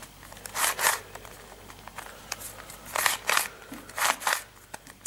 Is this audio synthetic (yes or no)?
no